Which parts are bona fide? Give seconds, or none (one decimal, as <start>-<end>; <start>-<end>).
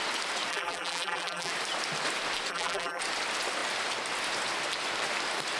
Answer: 0.0-0.5; 1.5-2.5; 3.0-5.6